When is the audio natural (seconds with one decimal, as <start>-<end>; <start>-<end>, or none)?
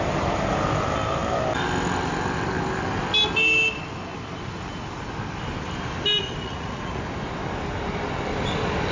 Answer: 0.0-6.4; 7.0-8.9